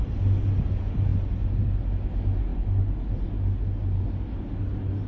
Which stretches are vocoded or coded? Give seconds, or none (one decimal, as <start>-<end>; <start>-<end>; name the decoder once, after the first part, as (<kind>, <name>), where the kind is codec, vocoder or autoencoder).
none